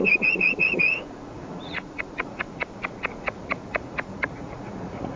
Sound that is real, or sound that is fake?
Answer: fake